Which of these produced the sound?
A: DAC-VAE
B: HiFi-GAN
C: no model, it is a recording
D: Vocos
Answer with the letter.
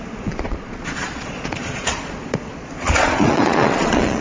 D